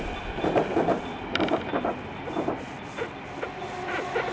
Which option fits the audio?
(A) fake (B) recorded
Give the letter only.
B